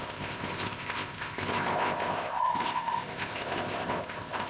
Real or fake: fake